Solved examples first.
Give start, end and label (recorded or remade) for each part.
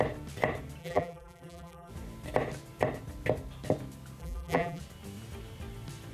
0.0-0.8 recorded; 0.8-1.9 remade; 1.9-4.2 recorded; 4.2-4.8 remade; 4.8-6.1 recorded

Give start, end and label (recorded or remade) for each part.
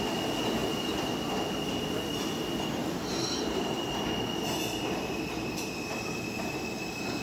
0.0-2.8 recorded; 2.8-3.9 remade; 3.9-7.2 recorded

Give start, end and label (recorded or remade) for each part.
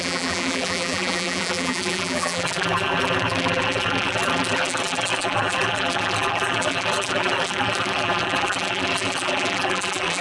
0.0-10.2 remade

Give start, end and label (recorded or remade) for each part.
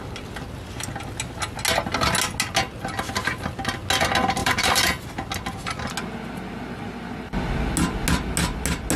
0.0-4.4 recorded; 4.4-5.0 remade; 5.0-9.0 recorded